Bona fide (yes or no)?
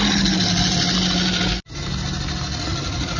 yes